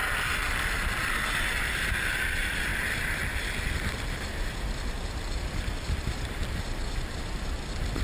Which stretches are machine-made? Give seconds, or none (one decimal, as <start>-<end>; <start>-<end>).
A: none